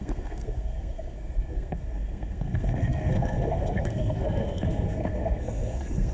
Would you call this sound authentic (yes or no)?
no